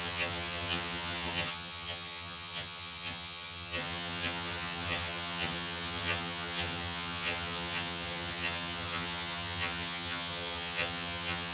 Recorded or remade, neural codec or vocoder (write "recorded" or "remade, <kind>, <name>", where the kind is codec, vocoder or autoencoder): remade, vocoder, HiFi-GAN